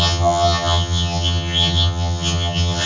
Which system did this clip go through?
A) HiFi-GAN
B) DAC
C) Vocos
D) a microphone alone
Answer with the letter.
A